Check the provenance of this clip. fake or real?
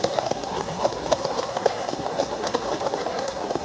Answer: fake